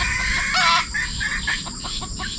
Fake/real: real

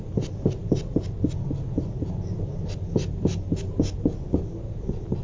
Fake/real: real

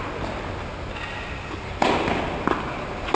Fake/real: real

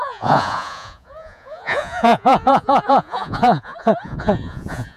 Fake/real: fake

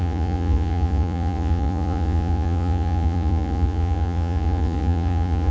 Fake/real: fake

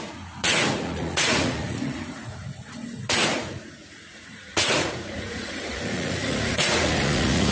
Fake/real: fake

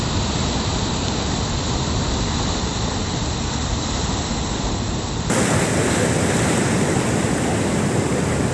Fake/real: real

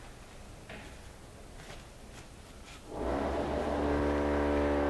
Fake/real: real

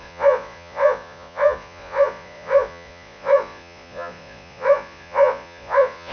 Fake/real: fake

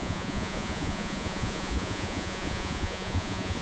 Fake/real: fake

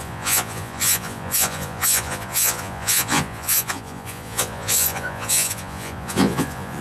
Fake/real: fake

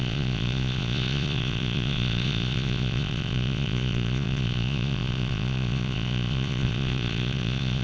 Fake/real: fake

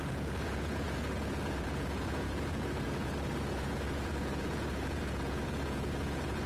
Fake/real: fake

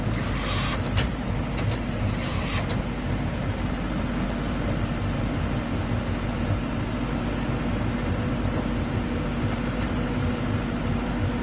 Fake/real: real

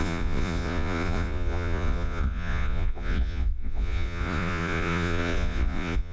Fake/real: fake